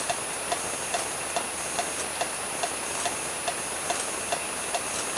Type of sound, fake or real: real